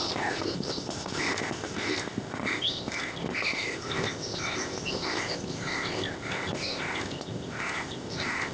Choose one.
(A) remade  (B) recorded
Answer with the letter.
A